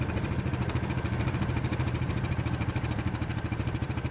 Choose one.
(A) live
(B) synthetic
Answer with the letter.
B